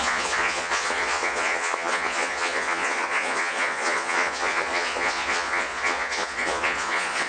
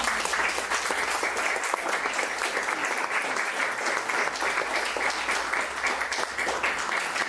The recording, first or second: second